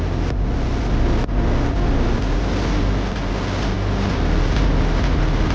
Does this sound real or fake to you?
real